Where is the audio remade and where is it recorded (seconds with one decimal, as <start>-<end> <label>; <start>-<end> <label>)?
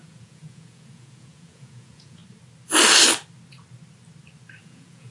0.0-2.2 remade; 2.2-4.6 recorded; 4.6-5.1 remade